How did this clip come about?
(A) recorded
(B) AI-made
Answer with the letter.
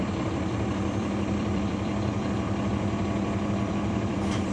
B